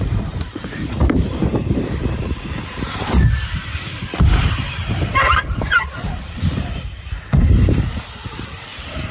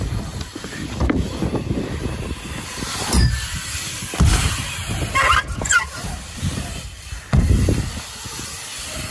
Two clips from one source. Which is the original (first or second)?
second